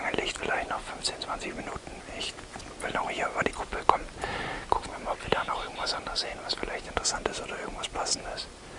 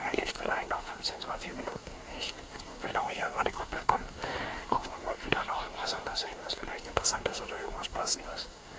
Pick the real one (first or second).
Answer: first